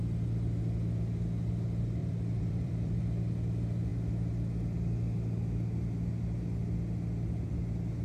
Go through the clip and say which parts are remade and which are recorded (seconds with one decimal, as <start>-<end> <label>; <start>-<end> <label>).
0.0-2.0 recorded; 2.0-3.0 remade; 3.0-8.0 recorded